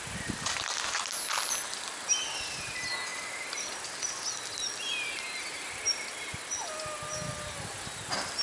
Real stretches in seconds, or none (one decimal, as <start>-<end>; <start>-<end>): 0.0-8.4